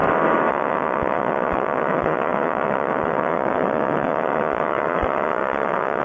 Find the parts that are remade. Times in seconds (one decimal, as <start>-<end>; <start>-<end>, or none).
0.5-6.0